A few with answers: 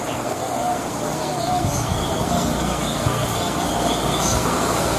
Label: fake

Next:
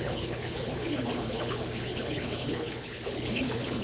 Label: fake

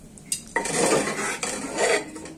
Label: real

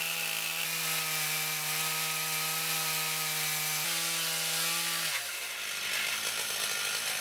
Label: real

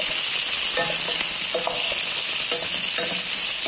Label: real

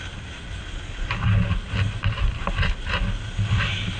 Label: real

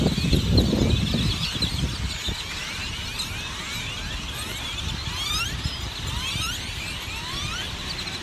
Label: real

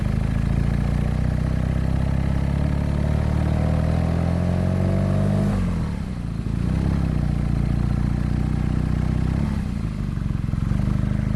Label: real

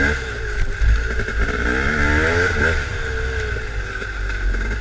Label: real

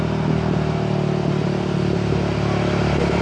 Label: real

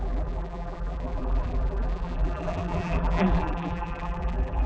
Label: fake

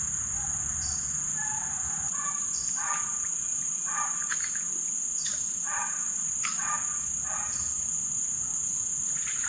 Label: fake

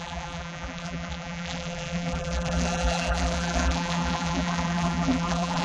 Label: fake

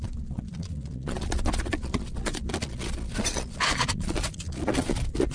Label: fake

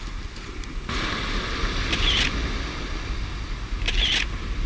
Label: real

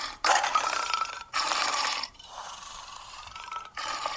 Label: fake